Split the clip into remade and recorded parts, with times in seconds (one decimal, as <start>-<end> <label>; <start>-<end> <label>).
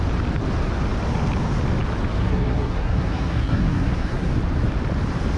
0.0-2.2 recorded; 2.2-4.3 remade; 4.3-5.4 recorded